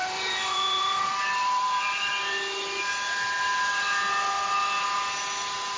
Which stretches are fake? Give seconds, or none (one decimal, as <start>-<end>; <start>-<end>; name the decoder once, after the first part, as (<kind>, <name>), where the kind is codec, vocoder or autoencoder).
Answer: 0.0-2.1 (vocoder, BigVGAN v2)